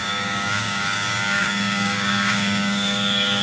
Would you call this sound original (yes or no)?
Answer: no